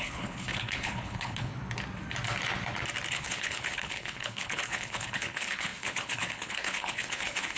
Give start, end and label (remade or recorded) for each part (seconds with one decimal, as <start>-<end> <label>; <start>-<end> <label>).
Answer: 0.0-1.5 remade; 1.5-3.1 recorded; 3.1-7.6 remade